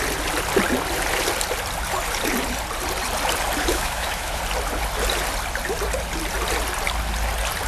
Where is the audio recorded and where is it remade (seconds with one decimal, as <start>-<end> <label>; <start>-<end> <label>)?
0.0-3.7 recorded; 3.7-4.4 remade; 4.4-7.7 recorded